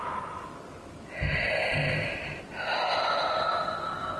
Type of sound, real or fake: real